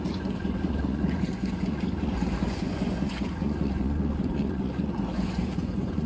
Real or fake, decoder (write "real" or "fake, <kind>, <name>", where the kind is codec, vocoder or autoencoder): fake, vocoder, Vocos